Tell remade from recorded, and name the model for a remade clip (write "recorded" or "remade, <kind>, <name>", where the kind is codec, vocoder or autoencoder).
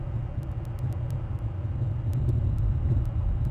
recorded